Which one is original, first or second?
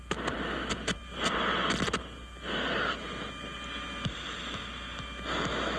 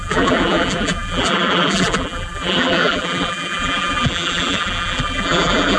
first